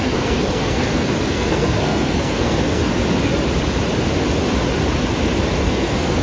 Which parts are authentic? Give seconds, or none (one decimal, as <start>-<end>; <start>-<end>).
3.0-5.6